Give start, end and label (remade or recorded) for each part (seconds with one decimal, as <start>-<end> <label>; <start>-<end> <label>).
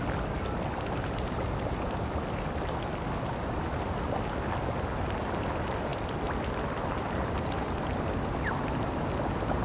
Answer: 0.0-9.6 recorded